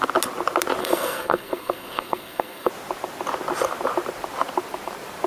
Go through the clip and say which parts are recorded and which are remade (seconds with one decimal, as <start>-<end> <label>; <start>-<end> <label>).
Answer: 0.0-0.8 recorded; 0.8-2.7 remade; 2.7-5.3 recorded